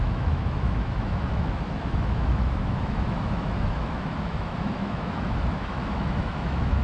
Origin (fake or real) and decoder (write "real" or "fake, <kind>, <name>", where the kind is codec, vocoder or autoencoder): fake, autoencoder, DAC-VAE